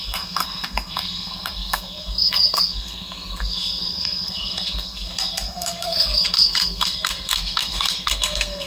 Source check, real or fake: fake